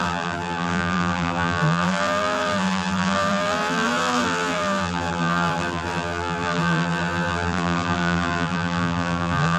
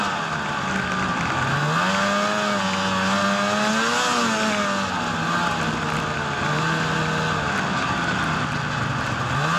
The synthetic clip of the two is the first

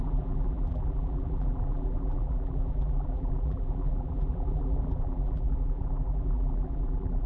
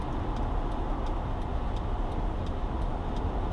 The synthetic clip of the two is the first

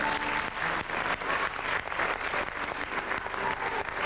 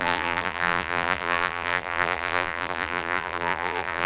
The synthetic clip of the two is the second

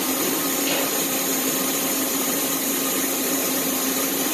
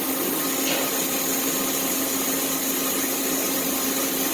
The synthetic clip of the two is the first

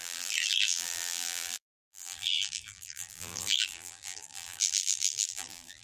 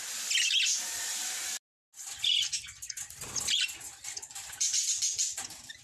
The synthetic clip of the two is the first